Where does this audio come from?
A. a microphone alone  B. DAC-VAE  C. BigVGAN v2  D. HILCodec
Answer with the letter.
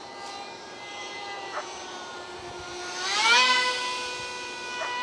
C